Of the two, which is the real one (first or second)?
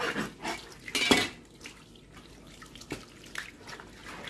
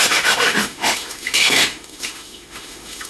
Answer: first